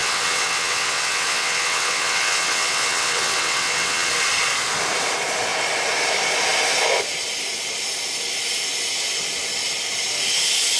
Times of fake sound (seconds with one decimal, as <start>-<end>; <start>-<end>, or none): 0.0-4.1